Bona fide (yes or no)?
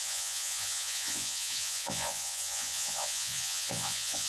no